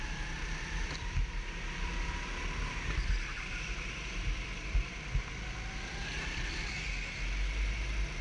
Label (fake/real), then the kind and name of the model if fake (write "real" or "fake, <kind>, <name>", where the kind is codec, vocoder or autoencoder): real